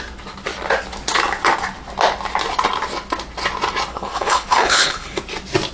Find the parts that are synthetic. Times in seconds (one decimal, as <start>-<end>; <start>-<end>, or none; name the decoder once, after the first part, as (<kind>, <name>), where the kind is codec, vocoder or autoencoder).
3.9-5.2 (codec, HILCodec)